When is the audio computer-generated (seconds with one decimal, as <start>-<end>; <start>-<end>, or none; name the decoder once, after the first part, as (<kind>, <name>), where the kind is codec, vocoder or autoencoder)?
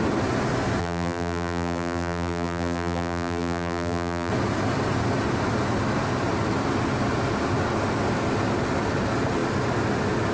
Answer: 0.8-4.3 (vocoder, BigVGAN v2)